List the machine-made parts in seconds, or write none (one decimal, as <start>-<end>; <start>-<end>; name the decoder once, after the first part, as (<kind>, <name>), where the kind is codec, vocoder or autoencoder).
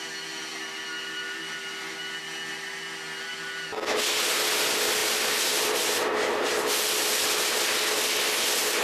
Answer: none